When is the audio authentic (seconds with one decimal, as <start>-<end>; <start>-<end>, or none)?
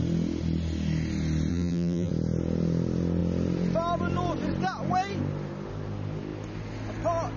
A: 0.0-1.5; 2.1-7.4